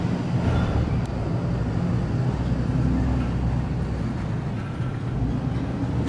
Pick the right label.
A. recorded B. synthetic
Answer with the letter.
A